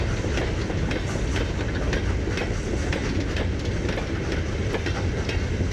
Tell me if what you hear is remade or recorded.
recorded